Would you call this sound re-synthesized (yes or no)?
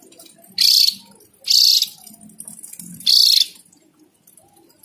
no